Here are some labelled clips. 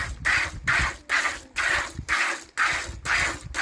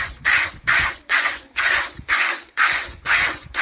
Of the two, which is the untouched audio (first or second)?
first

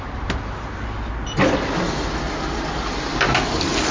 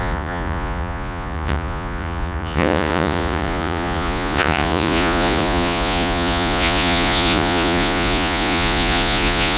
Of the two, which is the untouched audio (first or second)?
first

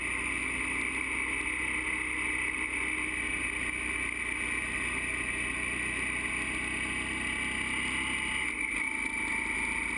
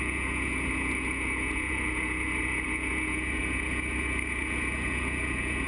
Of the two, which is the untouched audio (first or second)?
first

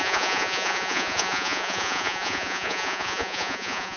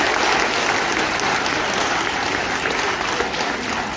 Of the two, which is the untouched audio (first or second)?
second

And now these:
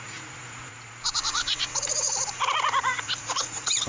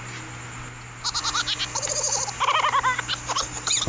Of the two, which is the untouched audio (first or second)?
second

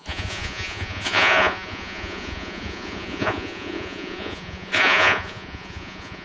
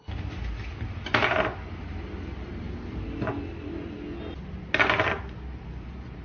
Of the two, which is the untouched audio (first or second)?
second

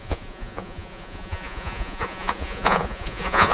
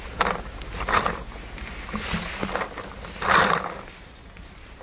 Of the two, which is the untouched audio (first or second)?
second